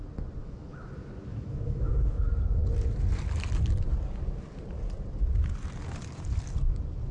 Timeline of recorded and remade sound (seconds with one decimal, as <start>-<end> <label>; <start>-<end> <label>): 0.0-0.4 recorded; 0.4-0.9 remade; 0.9-1.3 recorded; 1.3-2.2 remade; 2.2-7.1 recorded